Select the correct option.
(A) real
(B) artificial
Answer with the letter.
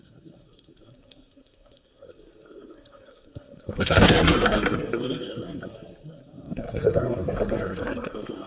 B